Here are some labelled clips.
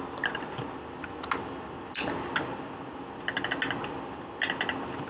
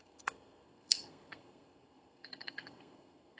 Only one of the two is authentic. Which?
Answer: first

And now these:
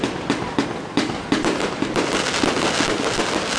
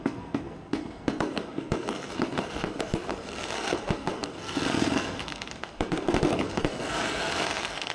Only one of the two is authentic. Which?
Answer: first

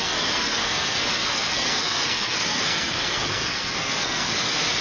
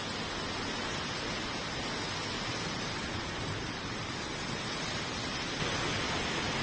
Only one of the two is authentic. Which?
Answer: second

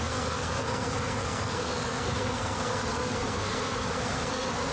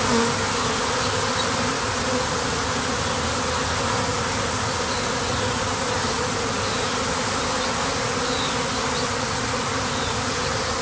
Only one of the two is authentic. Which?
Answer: second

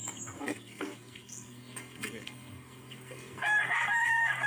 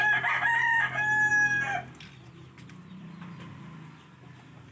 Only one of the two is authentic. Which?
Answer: second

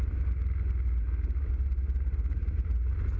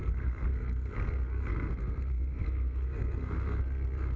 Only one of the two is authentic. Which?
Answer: first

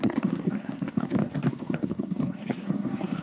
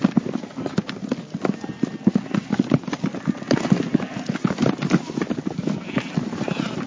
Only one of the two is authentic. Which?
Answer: second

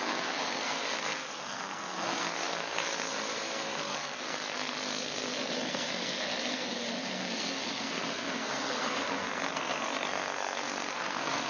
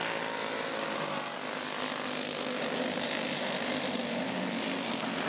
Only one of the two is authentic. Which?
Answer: second